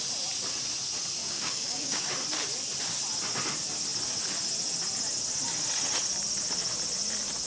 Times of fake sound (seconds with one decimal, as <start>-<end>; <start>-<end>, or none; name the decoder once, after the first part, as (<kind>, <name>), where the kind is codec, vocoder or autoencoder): 1.2-2.1 (codec, DAC)